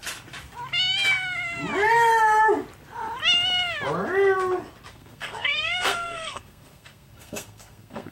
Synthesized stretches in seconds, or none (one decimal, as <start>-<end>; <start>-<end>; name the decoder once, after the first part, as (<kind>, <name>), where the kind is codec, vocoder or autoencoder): 4.9-8.1 (codec, SNAC)